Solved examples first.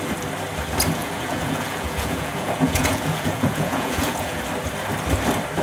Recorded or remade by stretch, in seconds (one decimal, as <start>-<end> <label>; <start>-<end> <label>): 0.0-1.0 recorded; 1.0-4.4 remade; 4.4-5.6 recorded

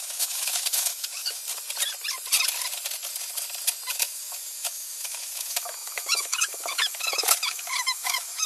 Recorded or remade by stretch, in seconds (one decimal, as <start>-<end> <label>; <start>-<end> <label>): 0.0-1.4 remade; 1.4-3.9 recorded; 3.9-8.5 remade

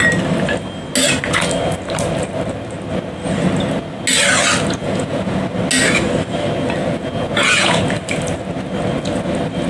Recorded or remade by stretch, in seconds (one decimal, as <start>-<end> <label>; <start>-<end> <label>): 0.0-4.8 recorded; 4.8-5.4 remade; 5.4-6.8 recorded; 6.8-7.8 remade; 7.8-9.7 recorded

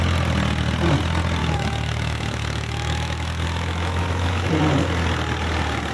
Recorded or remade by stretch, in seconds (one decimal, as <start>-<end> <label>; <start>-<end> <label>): 0.0-1.4 recorded; 1.4-4.5 remade; 4.5-5.9 recorded

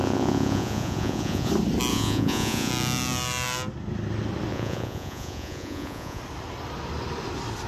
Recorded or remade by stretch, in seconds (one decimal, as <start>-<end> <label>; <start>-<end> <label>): 0.0-1.5 remade; 1.5-1.9 recorded; 1.9-2.7 remade; 2.7-4.5 recorded; 4.5-6.2 remade; 6.2-7.7 recorded

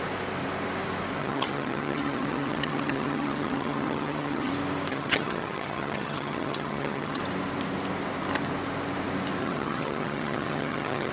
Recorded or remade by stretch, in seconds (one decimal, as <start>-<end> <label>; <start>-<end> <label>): 0.0-1.2 recorded; 1.2-4.5 remade; 4.5-4.9 recorded; 4.9-7.2 remade; 7.2-9.4 recorded; 9.4-11.1 remade

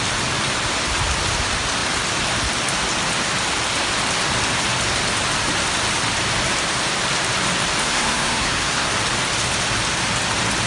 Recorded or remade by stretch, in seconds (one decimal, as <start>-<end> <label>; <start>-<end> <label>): 0.0-7.8 recorded; 7.8-8.9 remade; 8.9-10.7 recorded

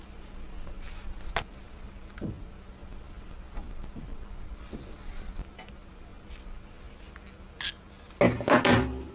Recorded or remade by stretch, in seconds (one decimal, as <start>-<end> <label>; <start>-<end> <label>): 0.0-9.1 recorded